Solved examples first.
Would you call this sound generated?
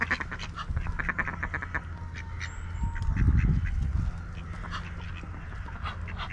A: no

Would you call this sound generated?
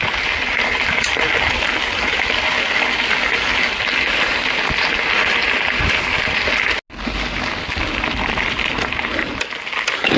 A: no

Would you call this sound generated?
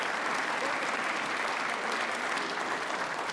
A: yes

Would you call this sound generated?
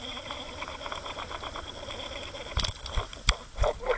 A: no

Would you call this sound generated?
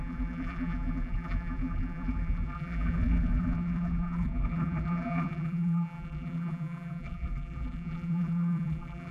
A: yes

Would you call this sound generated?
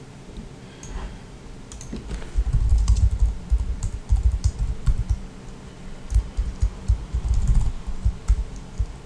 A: no